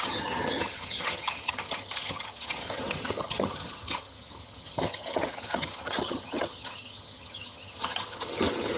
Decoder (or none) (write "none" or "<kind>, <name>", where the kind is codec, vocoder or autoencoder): vocoder, HiFi-GAN